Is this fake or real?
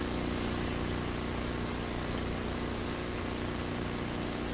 real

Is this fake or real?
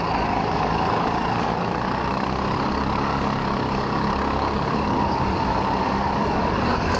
fake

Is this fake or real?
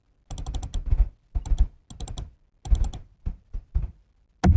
real